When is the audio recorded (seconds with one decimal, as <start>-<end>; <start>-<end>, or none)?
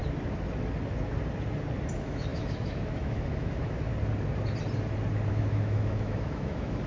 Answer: 0.0-1.9; 3.9-5.3